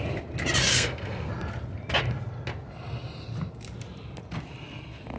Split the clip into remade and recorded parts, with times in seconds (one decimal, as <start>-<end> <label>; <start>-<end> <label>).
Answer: 0.0-0.7 recorded; 0.7-1.3 remade; 1.3-5.2 recorded